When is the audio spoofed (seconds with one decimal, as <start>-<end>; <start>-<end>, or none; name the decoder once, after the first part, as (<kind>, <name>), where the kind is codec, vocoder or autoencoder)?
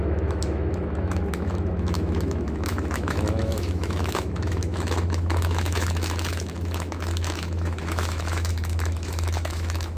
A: 0.0-10.0 (autoencoder, DAC-VAE)